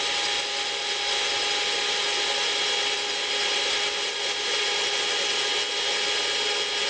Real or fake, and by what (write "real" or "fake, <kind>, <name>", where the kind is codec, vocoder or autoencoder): real